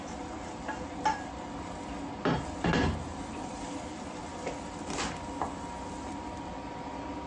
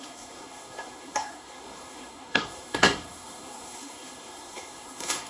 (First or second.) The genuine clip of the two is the first